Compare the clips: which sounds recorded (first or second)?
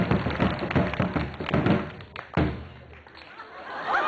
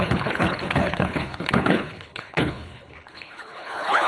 first